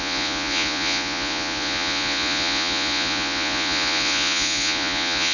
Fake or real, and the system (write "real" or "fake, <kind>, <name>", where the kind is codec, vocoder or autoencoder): fake, vocoder, Vocos